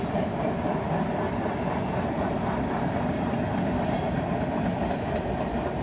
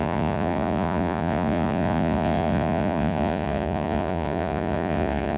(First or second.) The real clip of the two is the first